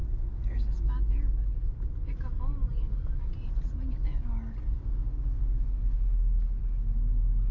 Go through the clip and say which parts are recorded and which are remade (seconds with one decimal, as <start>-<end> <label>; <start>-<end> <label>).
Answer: 0.0-7.5 recorded